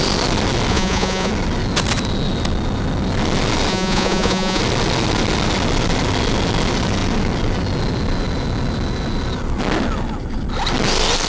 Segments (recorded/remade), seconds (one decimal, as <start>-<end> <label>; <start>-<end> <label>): 0.0-0.7 recorded; 0.7-1.3 remade; 1.3-3.7 recorded; 3.7-4.6 remade; 4.6-11.3 recorded